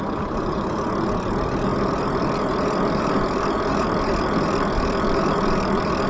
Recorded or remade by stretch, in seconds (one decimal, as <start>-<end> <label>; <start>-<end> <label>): 0.0-6.1 recorded